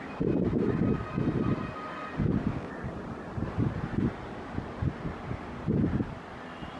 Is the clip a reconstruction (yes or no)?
no